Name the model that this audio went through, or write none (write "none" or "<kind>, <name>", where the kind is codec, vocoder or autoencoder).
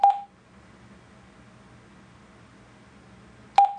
none